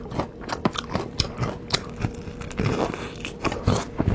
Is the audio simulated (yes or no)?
no